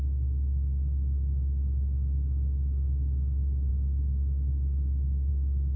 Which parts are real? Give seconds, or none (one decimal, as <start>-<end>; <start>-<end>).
0.0-5.8